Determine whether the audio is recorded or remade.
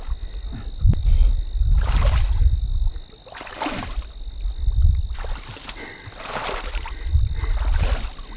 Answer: recorded